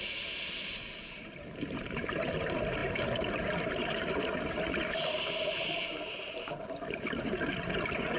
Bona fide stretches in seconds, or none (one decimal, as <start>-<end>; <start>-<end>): none